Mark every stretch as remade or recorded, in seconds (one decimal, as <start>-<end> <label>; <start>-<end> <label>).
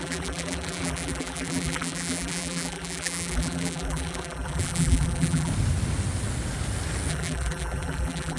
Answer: 0.0-5.5 remade; 5.5-7.1 recorded; 7.1-8.4 remade